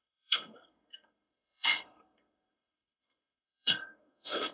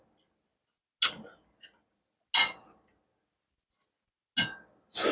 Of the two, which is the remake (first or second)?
first